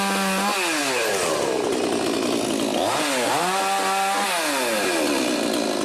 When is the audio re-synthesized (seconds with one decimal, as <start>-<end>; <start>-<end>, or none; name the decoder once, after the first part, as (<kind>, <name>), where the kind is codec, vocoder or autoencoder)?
none